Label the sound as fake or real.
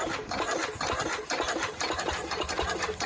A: real